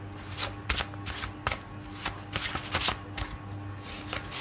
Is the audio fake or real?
real